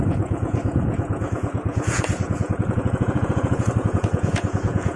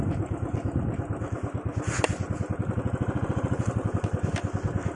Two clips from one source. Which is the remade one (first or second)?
first